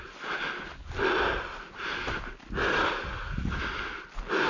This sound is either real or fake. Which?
real